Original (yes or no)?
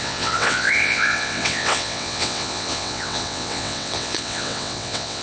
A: no